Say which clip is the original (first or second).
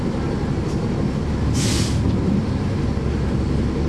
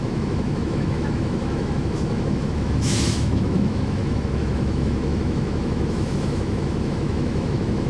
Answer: first